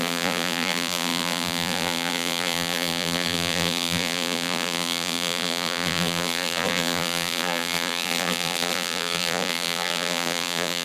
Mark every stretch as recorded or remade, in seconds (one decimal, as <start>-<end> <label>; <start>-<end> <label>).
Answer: 0.0-10.8 remade